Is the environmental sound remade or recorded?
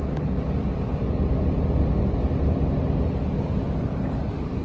recorded